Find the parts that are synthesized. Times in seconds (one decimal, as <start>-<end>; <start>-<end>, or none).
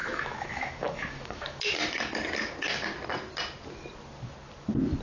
0.0-1.6